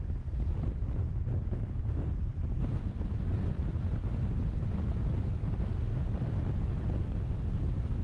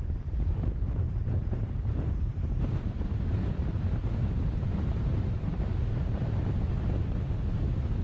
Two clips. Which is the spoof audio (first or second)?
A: second